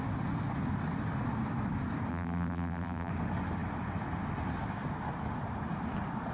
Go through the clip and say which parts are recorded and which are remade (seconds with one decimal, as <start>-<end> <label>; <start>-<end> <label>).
0.0-2.1 recorded; 2.1-3.1 remade; 3.1-6.3 recorded